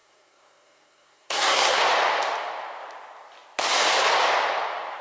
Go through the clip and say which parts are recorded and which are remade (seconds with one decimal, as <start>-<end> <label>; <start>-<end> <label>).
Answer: 0.0-1.8 remade; 1.8-5.0 recorded

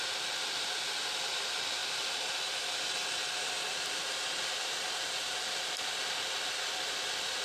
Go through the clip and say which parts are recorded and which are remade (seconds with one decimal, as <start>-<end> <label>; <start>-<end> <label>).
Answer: 0.0-7.4 recorded

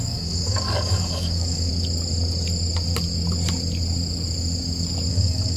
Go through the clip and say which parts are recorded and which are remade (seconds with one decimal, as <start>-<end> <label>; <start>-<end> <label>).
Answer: 0.0-1.7 remade; 1.7-5.1 recorded; 5.1-5.6 remade